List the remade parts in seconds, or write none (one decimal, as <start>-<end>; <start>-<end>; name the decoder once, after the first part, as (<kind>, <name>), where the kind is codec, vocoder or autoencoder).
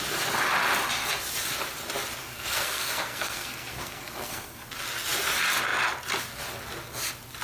2.2-4.7 (codec, SNAC)